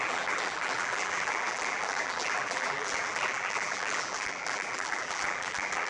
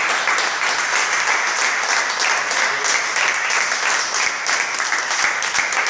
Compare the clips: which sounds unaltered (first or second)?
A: second